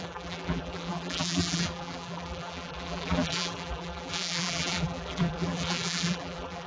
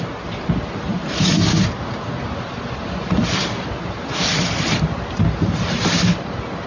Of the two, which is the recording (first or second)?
second